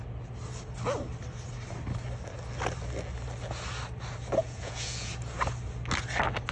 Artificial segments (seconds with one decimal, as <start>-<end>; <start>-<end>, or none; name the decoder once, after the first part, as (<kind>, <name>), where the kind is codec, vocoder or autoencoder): 4.4-5.1 (vocoder, Vocos)